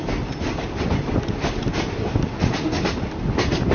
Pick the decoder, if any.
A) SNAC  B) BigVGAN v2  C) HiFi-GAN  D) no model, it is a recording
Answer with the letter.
D